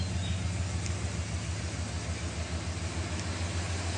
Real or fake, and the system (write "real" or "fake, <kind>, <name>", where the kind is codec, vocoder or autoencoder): real